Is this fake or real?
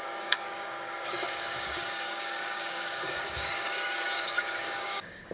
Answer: fake